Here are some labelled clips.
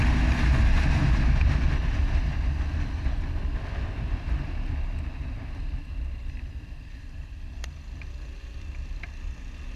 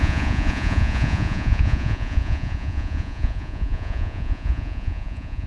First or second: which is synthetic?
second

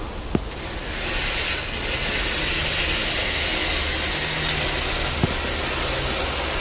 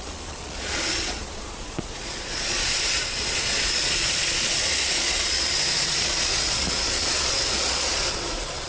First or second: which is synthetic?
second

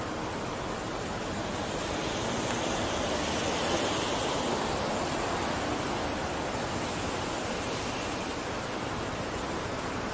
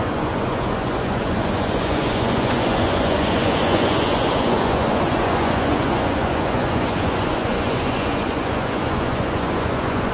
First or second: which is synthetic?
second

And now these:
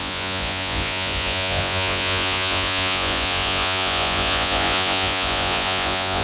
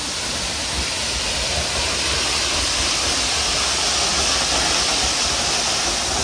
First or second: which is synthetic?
first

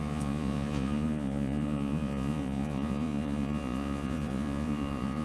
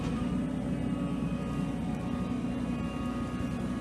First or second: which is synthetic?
first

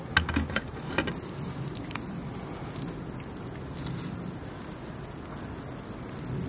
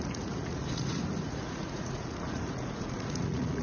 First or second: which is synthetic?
second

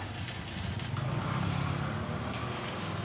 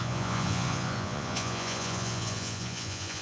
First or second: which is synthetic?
second